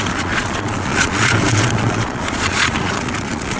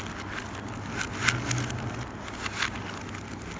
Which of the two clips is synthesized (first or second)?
first